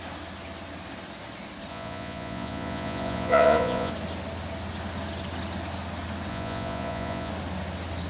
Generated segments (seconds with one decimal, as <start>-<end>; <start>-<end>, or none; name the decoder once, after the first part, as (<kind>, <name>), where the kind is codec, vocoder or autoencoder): 1.7-3.9 (vocoder, Vocos); 6.3-7.3